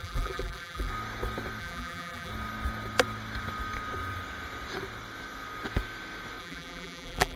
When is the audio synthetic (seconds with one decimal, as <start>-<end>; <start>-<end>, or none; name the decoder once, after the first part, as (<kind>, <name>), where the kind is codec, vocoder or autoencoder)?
0.0-0.9 (vocoder, BigVGAN v2); 1.6-2.3; 6.4-7.4